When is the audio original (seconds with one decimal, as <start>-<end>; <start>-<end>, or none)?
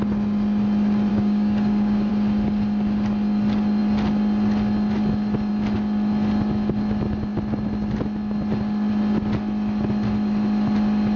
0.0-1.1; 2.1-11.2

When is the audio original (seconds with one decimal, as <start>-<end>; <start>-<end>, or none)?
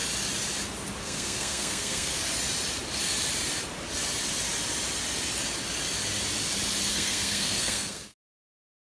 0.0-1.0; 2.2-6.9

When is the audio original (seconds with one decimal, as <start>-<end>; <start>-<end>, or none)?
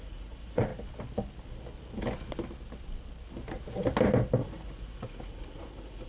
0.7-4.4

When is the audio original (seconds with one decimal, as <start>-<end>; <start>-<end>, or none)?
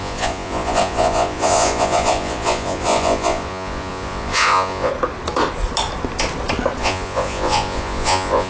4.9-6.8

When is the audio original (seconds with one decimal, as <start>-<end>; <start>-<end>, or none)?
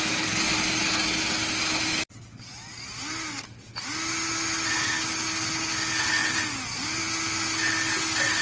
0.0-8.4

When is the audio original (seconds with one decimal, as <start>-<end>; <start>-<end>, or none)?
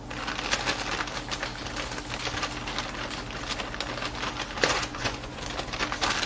0.0-4.7; 5.4-6.3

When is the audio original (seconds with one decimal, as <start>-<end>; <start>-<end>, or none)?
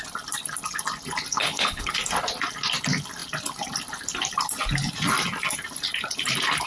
0.0-1.4; 1.9-6.7